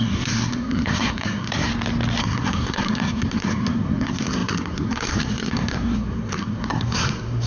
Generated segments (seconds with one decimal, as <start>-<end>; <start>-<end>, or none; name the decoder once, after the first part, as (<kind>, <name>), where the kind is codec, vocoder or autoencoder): 0.0-1.7 (codec, SNAC); 2.2-7.5